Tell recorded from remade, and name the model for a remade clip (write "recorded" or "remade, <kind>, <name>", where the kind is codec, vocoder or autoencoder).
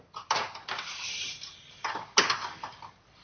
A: recorded